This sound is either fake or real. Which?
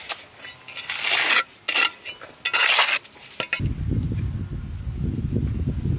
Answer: real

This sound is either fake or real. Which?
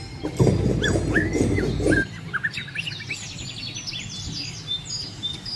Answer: real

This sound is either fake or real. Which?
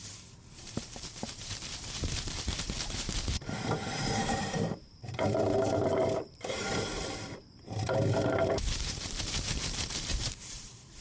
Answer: fake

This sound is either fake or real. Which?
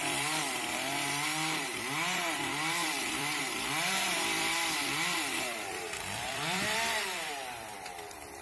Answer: fake